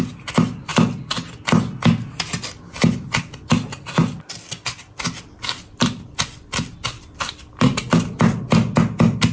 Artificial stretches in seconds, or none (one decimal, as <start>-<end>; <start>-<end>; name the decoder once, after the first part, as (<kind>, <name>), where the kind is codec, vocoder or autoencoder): 4.0-7.7 (vocoder, BigVGAN v2)